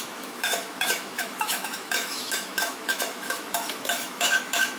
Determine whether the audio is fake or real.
fake